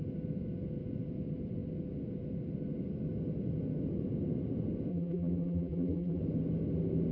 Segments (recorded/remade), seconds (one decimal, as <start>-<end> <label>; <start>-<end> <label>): 0.0-4.9 recorded; 4.9-6.2 remade; 6.2-7.1 recorded

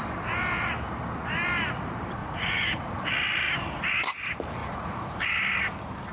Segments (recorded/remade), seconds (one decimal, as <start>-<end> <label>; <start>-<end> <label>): 0.0-2.2 recorded; 2.2-3.1 remade; 3.1-4.6 recorded; 4.6-5.2 remade; 5.2-6.1 recorded

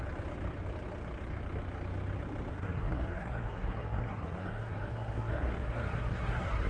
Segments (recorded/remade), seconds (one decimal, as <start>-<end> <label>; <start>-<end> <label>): 0.0-2.5 recorded; 2.5-6.7 remade